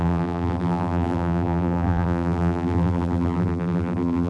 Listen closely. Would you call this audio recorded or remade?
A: remade